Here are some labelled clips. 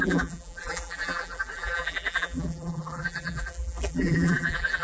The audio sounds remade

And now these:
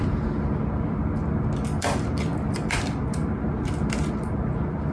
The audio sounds remade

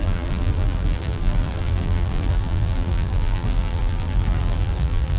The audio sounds remade